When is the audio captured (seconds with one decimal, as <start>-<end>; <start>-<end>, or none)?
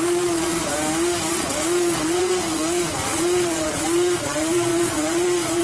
0.6-1.3